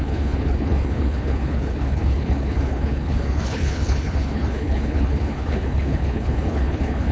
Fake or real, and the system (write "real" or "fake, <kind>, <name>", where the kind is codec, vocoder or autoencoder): fake, codec, HILCodec